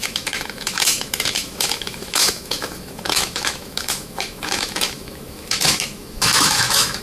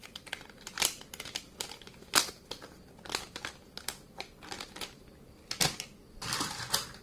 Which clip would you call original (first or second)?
second